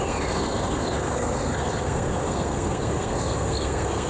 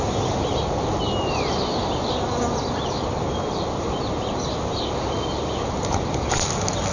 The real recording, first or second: second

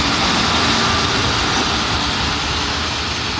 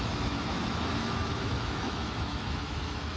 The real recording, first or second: first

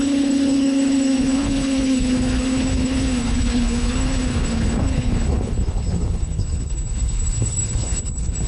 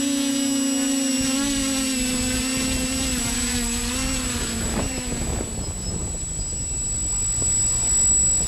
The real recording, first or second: second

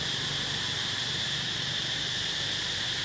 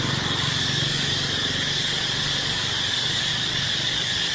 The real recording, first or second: first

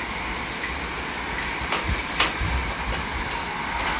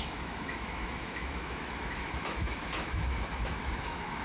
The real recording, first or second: first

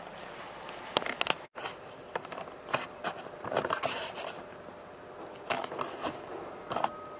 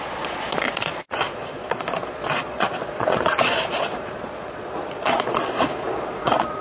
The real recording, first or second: first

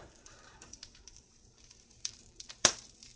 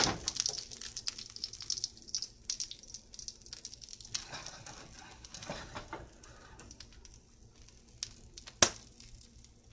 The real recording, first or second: second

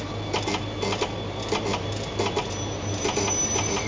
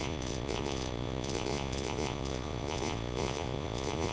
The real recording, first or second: first